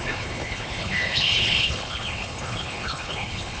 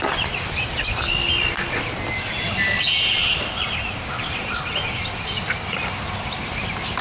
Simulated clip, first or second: first